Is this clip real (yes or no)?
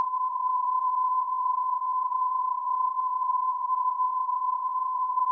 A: no